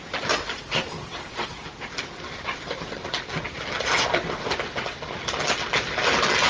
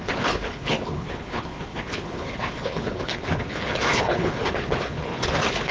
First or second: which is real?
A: first